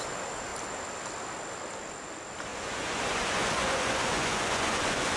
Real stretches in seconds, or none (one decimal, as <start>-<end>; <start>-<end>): 0.0-2.5